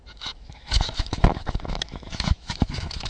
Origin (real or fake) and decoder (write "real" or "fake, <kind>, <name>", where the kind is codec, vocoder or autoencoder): fake, autoencoder, DAC-VAE